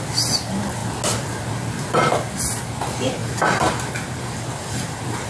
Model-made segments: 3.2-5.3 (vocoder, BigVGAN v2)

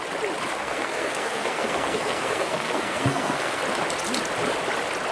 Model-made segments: 0.5-3.6 (codec, SNAC)

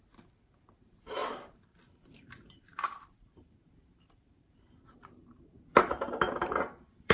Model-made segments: 0.0-7.1 (vocoder, BigVGAN v2)

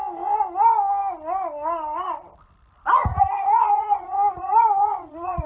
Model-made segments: 3.1-5.5 (vocoder, Vocos)

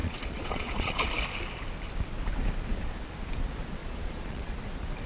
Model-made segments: 0.0-1.1 (vocoder, Vocos); 3.8-4.5

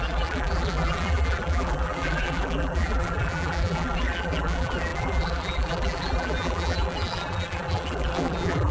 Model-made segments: 0.0-8.7 (vocoder, BigVGAN v2)

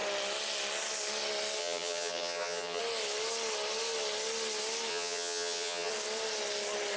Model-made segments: 1.6-2.8 (vocoder, HiFi-GAN); 4.9-5.9